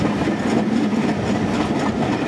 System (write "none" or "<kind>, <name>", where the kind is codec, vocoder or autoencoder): none